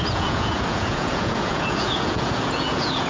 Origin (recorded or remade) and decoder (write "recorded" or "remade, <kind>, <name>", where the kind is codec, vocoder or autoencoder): remade, vocoder, Vocos